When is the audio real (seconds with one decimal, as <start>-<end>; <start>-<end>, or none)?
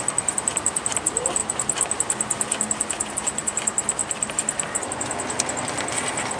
0.0-6.4